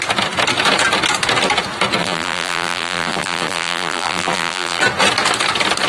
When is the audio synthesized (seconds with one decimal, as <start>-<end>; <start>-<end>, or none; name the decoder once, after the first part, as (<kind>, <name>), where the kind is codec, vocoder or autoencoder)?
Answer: 2.0-4.8 (vocoder, BigVGAN v2)